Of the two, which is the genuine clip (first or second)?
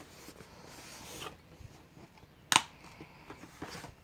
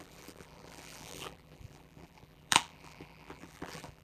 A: first